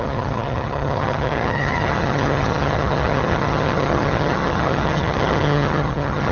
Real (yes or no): no